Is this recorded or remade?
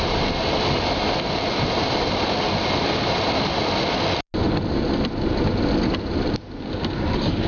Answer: recorded